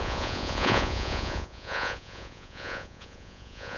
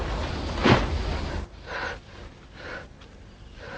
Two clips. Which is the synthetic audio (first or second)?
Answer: first